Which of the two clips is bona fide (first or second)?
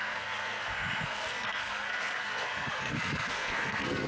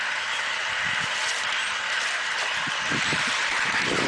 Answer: second